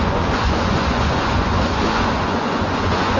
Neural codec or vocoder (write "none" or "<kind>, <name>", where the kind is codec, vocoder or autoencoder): vocoder, Vocos